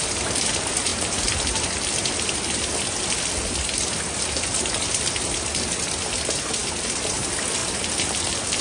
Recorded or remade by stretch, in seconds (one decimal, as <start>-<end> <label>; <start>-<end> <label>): 0.0-8.6 recorded

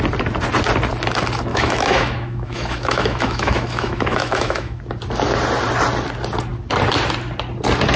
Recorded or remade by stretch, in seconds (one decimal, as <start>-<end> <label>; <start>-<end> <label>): 0.0-1.5 recorded; 1.5-4.8 remade; 4.8-8.0 recorded

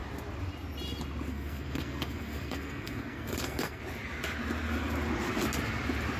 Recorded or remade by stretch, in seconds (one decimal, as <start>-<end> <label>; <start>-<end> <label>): 0.0-1.3 recorded; 1.3-3.8 remade; 3.8-6.2 recorded